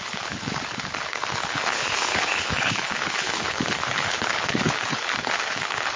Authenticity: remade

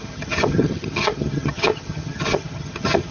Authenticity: remade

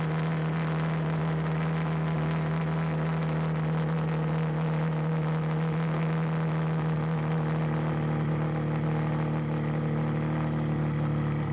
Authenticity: recorded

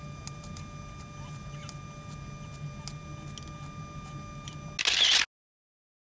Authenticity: recorded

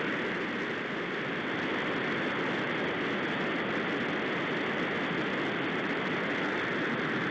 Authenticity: recorded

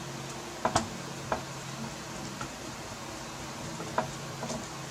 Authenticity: recorded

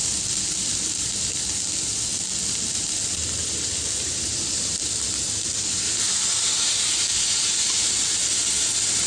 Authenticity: recorded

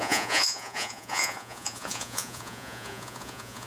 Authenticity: remade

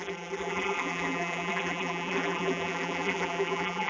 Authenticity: remade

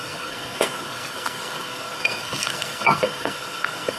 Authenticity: remade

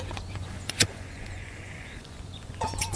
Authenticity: remade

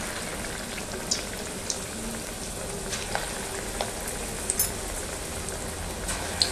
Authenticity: recorded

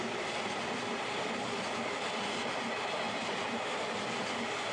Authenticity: recorded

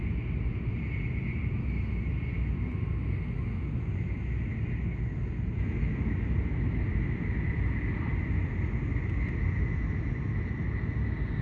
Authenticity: recorded